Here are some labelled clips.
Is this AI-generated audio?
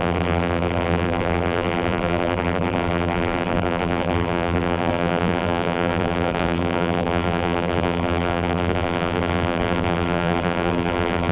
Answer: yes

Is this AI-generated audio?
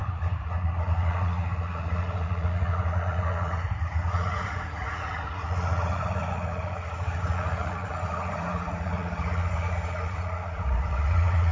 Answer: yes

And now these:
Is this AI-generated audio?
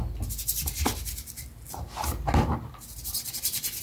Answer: no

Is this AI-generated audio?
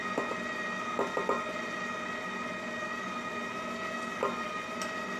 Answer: no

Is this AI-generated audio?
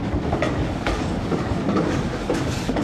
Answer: yes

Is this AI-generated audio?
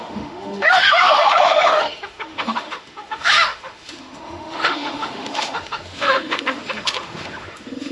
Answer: yes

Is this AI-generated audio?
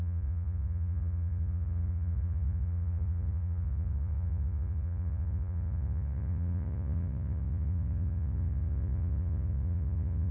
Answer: yes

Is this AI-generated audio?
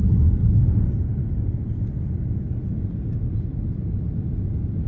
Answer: no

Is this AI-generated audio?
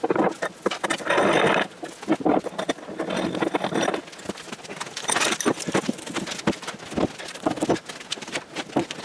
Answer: no